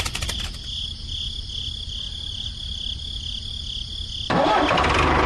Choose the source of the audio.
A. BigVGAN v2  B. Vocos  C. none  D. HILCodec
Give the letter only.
C